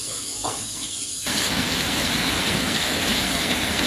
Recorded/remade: remade